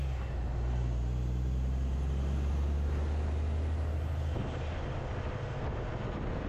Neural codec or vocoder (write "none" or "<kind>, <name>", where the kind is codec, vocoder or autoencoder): none